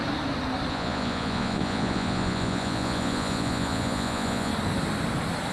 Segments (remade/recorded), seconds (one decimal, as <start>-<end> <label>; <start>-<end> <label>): 0.0-0.7 recorded; 0.7-4.5 remade; 4.5-5.5 recorded